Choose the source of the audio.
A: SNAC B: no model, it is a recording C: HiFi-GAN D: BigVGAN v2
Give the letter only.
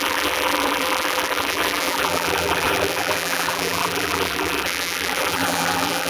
D